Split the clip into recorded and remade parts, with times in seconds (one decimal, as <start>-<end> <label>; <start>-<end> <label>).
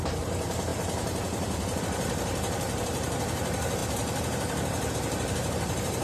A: 0.0-6.0 remade